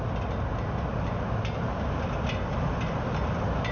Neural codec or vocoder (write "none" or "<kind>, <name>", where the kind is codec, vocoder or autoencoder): none